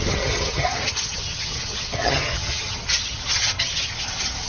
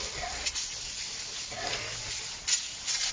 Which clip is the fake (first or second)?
first